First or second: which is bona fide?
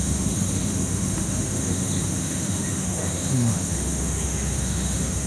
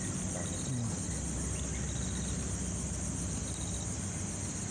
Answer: second